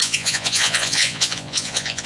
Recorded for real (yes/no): no